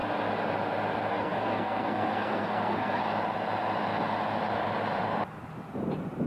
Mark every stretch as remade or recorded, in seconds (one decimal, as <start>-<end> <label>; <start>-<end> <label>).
0.0-1.1 recorded; 1.1-3.0 remade; 3.0-6.3 recorded

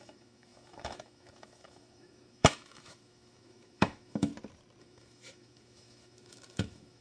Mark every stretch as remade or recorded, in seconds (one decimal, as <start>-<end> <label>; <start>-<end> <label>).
0.0-4.3 remade; 4.3-4.8 recorded; 4.8-7.0 remade

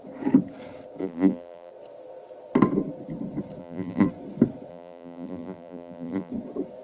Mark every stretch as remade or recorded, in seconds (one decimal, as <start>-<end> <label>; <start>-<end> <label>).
0.0-1.0 recorded; 1.0-1.7 remade; 1.7-3.6 recorded; 3.6-4.1 remade; 4.1-4.7 recorded; 4.7-6.3 remade; 6.3-6.8 recorded

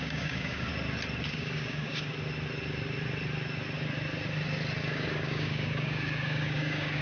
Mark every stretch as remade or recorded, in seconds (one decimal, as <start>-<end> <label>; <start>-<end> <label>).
0.0-0.7 remade; 0.7-1.3 recorded; 1.3-2.1 remade; 2.1-4.8 recorded; 4.8-7.0 remade

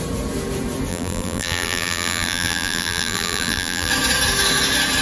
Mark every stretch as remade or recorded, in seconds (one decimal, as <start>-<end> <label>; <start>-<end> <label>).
0.0-0.9 recorded; 0.9-3.9 remade; 3.9-5.0 recorded